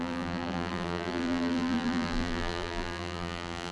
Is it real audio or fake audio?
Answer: fake